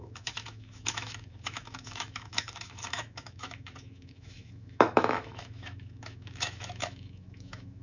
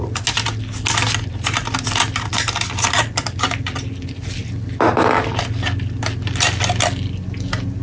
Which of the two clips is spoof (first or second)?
first